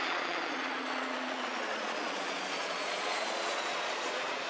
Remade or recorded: remade